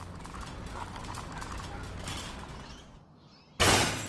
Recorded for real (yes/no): yes